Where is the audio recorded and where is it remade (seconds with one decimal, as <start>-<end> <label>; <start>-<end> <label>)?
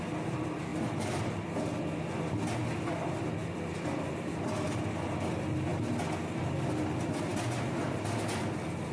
0.0-0.7 recorded; 0.7-1.2 remade; 1.2-8.9 recorded